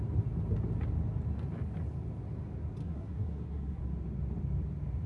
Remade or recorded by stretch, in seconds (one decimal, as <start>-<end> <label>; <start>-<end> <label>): 0.0-2.8 recorded; 2.8-3.8 remade; 3.8-5.1 recorded